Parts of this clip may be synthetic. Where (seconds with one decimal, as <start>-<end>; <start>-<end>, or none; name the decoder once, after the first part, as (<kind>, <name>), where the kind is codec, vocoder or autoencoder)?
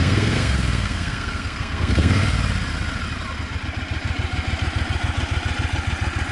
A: 0.0-2.2 (codec, SNAC)